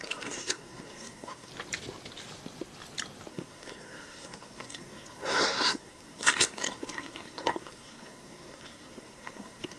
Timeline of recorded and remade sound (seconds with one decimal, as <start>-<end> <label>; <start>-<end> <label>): 0.0-1.5 remade; 1.5-3.3 recorded; 3.3-9.8 remade